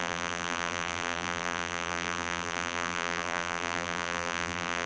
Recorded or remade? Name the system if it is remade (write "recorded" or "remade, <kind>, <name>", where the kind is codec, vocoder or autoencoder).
remade, vocoder, BigVGAN v2